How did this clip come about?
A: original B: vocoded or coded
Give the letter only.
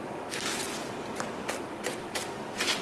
A